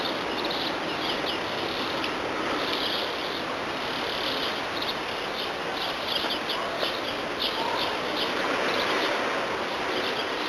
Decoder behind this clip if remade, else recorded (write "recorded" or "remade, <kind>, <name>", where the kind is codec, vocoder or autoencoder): recorded